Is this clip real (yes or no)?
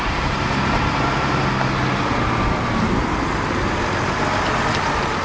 yes